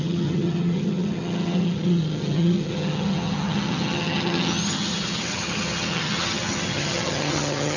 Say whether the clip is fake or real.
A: fake